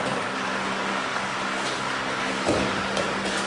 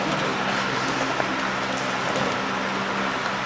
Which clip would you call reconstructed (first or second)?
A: first